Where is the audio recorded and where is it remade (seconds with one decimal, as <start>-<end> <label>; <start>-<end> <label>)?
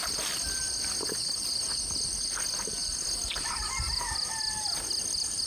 0.0-5.5 recorded